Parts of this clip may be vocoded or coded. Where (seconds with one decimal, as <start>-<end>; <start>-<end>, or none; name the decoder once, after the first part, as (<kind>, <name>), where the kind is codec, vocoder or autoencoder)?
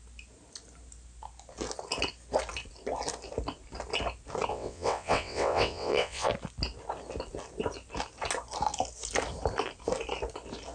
4.5-6.3 (vocoder, WaveNeXt)